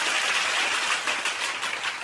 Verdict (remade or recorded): recorded